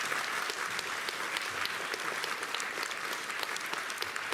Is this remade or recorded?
recorded